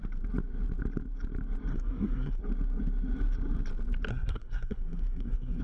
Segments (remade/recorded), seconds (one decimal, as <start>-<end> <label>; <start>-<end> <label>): 0.0-1.7 recorded; 1.7-2.4 remade; 2.4-4.1 recorded; 4.1-5.6 remade